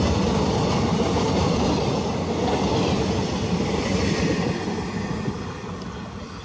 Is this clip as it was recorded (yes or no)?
yes